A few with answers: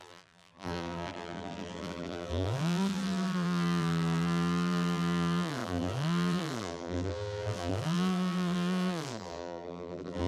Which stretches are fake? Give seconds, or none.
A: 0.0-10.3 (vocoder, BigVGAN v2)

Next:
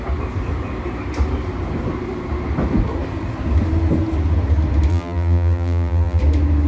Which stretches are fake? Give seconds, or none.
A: 4.9-6.2 (vocoder, BigVGAN v2)

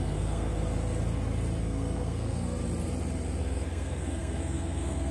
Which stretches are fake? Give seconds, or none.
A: 0.0-0.5 (codec, SNAC); 1.6-2.6; 3.4-5.1

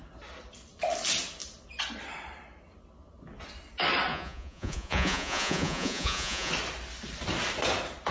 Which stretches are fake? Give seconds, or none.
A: 4.1-6.5 (vocoder, Vocos)

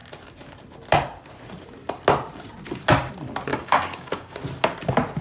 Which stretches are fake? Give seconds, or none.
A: 3.5-4.4 (codec, DAC)

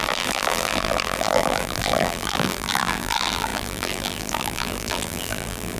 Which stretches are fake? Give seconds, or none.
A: 0.0-5.8 (vocoder, BigVGAN v2)

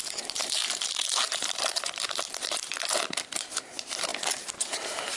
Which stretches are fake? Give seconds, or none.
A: 0.0-4.1 (vocoder, BigVGAN v2); 4.6-5.2